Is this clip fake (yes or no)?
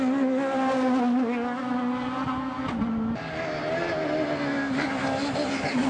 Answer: no